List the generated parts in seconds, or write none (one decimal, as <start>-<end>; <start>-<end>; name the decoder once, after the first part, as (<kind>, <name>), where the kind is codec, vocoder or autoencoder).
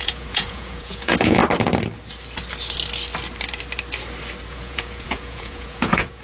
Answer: 0.0-1.4 (vocoder, Vocos); 4.5-6.2